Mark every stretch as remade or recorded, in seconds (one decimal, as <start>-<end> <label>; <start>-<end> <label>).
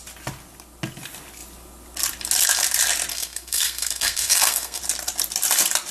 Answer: 0.0-3.1 recorded; 3.1-4.8 remade; 4.8-5.9 recorded